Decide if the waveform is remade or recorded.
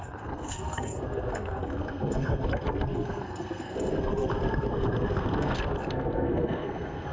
remade